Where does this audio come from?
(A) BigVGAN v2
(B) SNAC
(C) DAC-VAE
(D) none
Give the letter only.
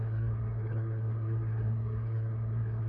B